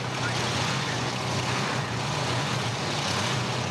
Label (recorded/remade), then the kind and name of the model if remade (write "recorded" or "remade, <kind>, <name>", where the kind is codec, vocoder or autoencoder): remade, vocoder, Vocos